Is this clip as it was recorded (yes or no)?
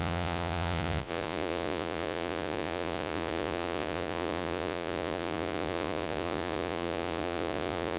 no